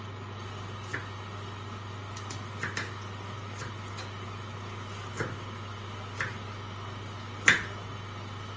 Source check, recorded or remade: recorded